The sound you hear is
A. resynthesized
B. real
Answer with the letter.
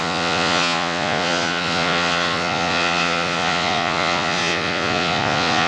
A